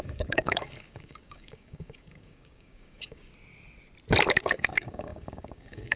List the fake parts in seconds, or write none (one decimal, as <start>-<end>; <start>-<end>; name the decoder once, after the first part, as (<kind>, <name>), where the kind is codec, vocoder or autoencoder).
0.0-3.3 (codec, DAC); 4.4-6.0